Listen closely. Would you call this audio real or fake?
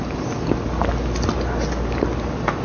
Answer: real